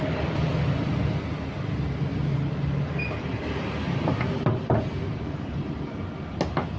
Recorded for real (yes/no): yes